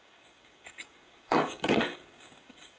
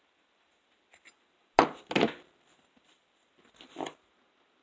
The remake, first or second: first